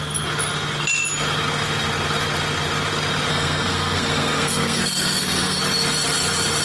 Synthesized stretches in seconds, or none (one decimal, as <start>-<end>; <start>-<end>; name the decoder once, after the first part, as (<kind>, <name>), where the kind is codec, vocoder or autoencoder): 3.3-5.6 (codec, SNAC)